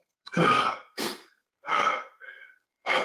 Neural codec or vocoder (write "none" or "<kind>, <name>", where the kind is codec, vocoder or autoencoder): codec, SNAC